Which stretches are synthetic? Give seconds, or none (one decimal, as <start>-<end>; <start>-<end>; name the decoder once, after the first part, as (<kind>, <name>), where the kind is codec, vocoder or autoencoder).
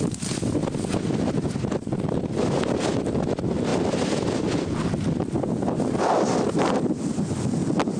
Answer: none